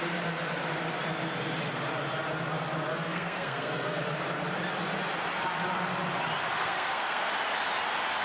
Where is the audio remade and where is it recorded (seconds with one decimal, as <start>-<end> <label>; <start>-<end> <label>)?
0.0-2.9 recorded; 2.9-4.0 remade; 4.0-6.6 recorded; 6.6-7.3 remade; 7.3-8.2 recorded